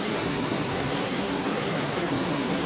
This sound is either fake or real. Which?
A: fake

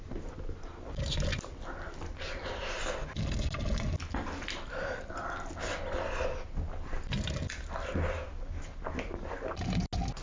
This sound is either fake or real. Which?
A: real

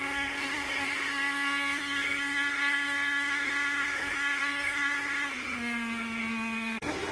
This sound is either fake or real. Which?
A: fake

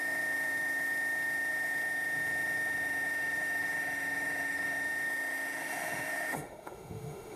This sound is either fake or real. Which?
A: fake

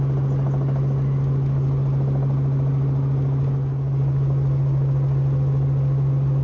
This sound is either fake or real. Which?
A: real